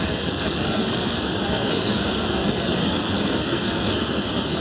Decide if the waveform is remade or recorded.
remade